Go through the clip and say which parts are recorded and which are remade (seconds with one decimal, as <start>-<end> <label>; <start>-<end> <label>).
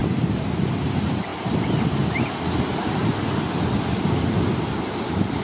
0.0-1.3 remade; 1.3-4.5 recorded; 4.5-5.4 remade